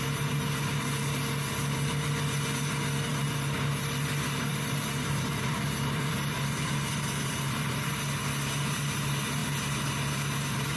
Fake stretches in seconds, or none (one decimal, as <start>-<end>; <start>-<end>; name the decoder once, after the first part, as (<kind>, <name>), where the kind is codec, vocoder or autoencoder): 3.1-7.9 (vocoder, BigVGAN v2)